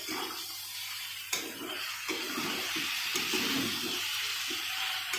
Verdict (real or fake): fake